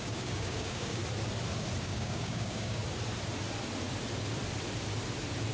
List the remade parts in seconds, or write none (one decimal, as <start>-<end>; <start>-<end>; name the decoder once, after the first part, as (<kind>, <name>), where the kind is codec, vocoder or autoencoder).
0.0-1.0 (codec, DAC); 1.8-2.8